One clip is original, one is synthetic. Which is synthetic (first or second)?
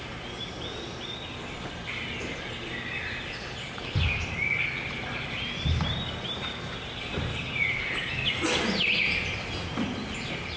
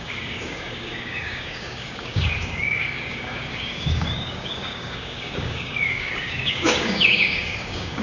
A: second